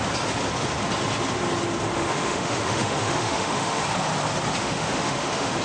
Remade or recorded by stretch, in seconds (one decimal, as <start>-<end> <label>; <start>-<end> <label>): 0.0-1.9 recorded; 1.9-3.8 remade; 3.8-4.6 recorded; 4.6-5.6 remade